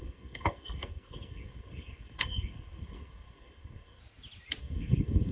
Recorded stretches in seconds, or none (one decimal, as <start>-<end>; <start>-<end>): 4.0-4.6